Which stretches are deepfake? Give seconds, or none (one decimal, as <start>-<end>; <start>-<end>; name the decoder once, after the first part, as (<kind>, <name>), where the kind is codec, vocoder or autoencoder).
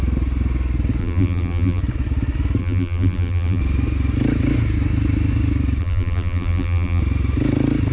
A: 1.0-1.8 (vocoder, BigVGAN v2); 2.6-3.6; 5.8-7.0